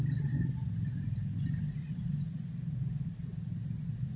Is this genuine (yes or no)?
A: yes